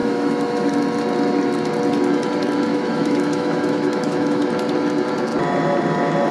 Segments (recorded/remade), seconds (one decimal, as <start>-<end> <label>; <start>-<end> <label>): 0.0-0.7 remade; 0.7-2.7 recorded; 2.7-4.5 remade; 4.5-6.3 recorded